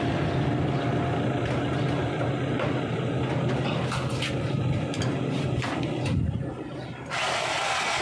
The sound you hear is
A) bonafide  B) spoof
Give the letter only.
B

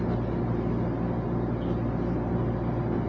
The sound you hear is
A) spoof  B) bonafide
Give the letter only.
B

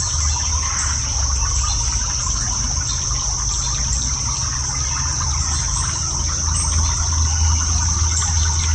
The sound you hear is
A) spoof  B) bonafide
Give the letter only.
B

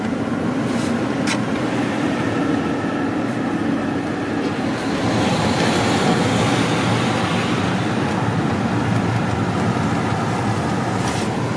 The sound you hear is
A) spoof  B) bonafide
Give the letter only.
B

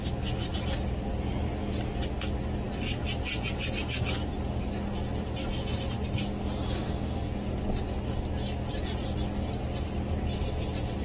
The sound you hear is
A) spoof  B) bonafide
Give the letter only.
B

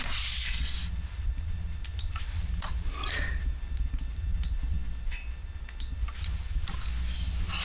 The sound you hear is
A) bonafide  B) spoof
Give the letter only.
A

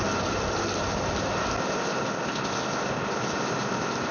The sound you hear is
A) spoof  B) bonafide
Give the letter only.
B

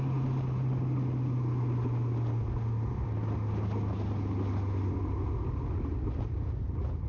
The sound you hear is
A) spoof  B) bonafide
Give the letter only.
B